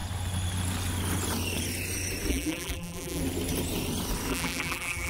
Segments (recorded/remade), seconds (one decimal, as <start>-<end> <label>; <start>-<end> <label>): 0.0-2.3 recorded; 2.3-3.2 remade; 3.2-4.3 recorded; 4.3-5.1 remade